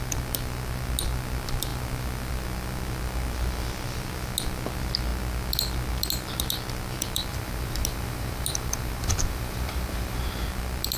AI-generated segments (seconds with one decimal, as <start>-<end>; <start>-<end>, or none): 7.3-10.5